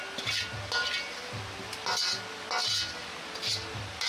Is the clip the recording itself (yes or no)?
yes